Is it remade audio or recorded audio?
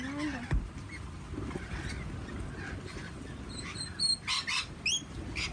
recorded